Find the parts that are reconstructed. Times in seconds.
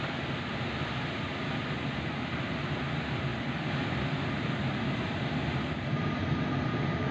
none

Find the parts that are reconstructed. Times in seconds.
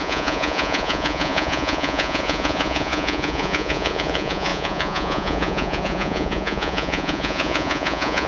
0.0-8.3 (vocoder, Vocos)